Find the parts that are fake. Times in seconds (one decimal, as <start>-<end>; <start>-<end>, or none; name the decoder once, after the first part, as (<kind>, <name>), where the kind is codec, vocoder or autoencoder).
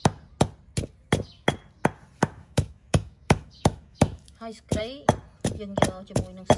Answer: 2.2-4.8 (autoencoder, DAC-VAE)